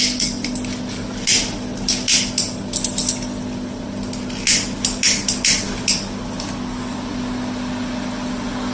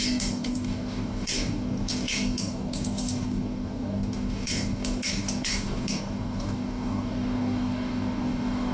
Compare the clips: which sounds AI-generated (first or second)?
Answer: second